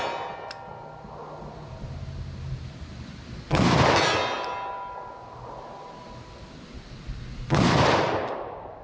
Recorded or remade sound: recorded